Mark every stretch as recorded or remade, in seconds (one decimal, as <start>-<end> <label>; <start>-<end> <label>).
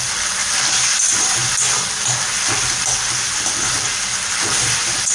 0.0-0.4 recorded; 0.4-1.6 remade; 1.6-4.1 recorded; 4.1-5.1 remade